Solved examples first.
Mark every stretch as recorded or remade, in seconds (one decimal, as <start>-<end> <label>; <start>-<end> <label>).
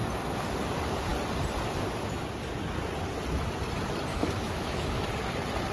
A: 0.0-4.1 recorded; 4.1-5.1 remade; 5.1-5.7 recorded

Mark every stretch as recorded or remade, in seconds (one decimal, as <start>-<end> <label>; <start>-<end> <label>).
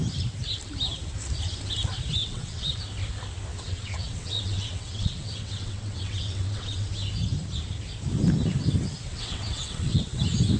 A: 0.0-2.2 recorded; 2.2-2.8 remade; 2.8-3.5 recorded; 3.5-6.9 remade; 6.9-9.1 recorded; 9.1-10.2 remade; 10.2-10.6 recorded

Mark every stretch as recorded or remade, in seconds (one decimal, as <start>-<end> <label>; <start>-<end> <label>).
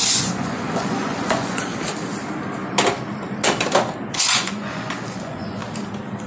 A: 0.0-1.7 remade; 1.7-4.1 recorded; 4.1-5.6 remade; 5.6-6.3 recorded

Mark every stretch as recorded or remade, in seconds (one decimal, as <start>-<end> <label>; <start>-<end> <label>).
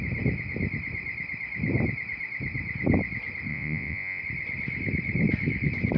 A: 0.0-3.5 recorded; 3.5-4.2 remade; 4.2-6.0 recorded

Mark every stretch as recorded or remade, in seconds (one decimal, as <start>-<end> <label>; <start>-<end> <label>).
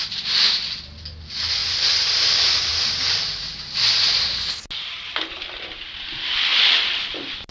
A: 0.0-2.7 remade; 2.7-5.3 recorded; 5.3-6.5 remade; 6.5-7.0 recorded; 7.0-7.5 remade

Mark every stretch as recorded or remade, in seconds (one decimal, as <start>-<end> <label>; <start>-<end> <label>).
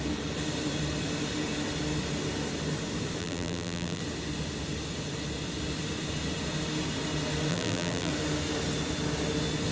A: 0.0-3.2 recorded; 3.2-4.0 remade; 4.0-7.5 recorded; 7.5-8.1 remade; 8.1-9.7 recorded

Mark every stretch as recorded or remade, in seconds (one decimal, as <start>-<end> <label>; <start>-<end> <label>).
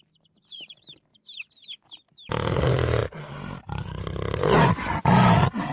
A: 0.0-5.7 recorded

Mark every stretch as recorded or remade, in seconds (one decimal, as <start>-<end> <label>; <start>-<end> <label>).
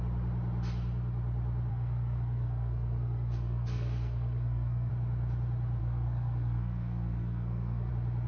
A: 0.0-1.7 recorded; 1.7-4.9 remade; 4.9-5.8 recorded; 5.8-7.9 remade; 7.9-8.3 recorded